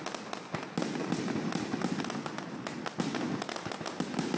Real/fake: real